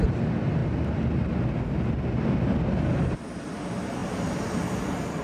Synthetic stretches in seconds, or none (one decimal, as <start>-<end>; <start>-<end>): 0.0-0.6; 3.2-5.2